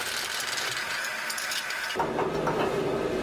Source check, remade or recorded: recorded